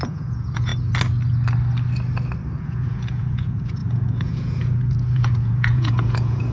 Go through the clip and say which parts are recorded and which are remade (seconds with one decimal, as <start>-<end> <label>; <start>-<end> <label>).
0.0-0.7 remade; 0.7-2.6 recorded; 2.6-6.5 remade